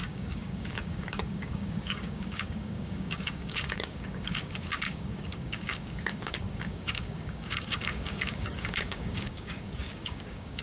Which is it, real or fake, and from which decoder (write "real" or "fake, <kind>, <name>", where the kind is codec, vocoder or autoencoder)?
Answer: fake, codec, DAC